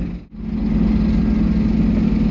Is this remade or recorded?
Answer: recorded